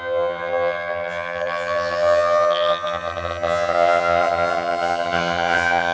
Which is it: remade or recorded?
remade